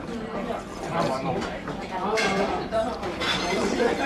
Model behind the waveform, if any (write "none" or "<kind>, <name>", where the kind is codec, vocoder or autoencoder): vocoder, BigVGAN v2